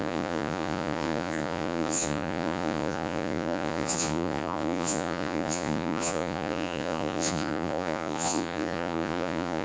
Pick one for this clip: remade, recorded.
remade